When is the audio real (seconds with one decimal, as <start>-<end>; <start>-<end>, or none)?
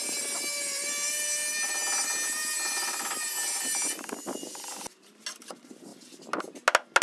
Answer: 0.0-7.0